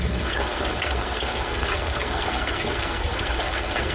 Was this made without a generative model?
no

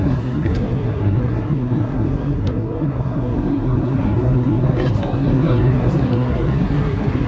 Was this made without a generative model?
no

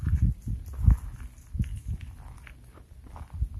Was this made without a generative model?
yes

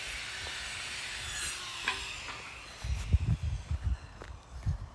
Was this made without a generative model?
yes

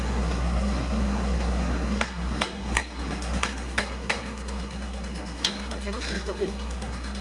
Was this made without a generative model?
no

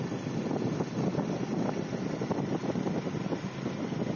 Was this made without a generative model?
yes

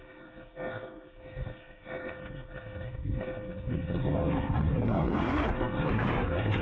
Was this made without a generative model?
no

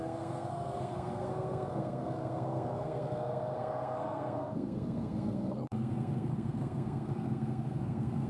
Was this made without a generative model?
no